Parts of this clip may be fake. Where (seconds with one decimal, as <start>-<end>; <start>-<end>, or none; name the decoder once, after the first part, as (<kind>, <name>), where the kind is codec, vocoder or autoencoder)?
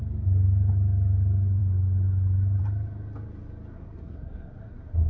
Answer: 3.7-5.1 (codec, SNAC)